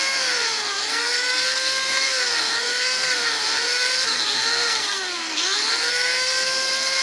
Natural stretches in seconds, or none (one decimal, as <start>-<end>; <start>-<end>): none

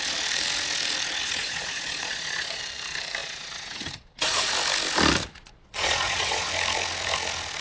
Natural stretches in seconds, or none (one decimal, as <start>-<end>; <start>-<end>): 0.0-1.2; 2.6-3.2; 4.5-5.2; 6.5-7.6

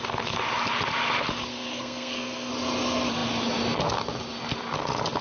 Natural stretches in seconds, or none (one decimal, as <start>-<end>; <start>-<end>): 0.0-1.5; 2.5-5.2

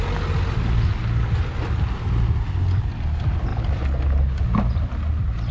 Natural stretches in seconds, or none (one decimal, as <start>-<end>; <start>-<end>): 0.0-5.5

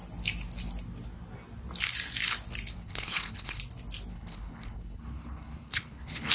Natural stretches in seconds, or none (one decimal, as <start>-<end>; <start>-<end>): 0.0-2.7; 3.6-4.1